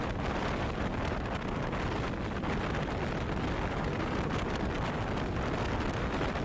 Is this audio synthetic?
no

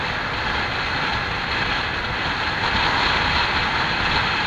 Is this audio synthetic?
no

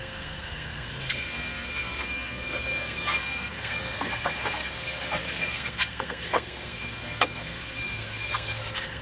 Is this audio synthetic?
yes